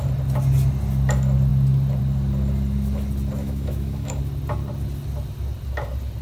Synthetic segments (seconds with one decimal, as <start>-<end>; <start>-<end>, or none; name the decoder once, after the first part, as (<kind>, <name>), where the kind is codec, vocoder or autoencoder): 3.4-4.2 (autoencoder, DAC-VAE)